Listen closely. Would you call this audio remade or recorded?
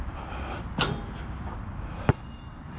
recorded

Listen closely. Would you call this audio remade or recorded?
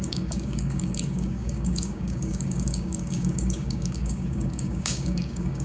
remade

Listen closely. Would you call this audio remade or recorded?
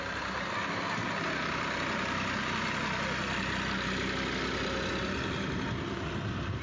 recorded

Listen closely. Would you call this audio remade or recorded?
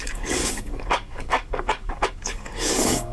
remade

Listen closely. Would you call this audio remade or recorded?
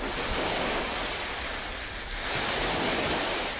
recorded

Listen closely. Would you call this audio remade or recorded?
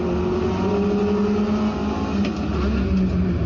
recorded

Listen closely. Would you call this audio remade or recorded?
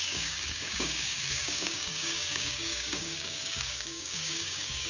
remade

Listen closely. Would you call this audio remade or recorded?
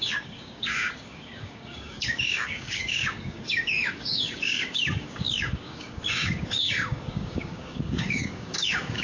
remade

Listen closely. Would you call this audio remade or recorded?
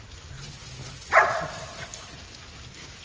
recorded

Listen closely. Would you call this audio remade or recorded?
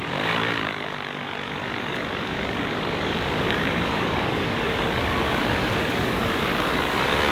remade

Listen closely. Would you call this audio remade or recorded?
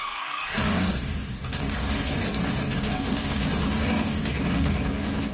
remade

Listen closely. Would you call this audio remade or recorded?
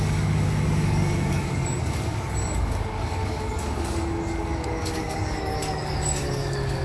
remade